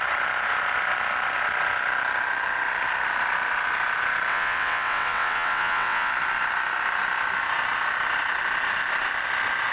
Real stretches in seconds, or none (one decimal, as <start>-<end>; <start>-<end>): 0.0-4.3; 6.1-9.7